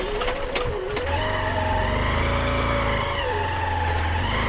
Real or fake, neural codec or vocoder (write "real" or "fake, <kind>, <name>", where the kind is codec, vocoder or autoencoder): real